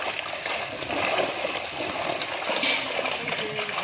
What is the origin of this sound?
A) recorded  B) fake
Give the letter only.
A